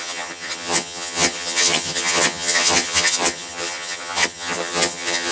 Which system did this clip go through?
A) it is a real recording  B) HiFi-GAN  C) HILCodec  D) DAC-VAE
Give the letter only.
B